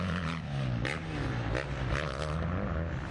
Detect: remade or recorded recorded